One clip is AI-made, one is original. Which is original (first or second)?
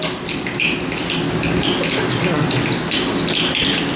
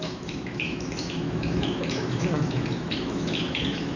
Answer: first